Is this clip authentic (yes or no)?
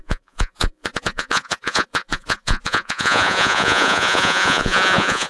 no